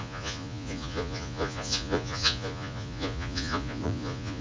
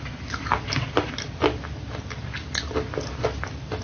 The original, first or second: second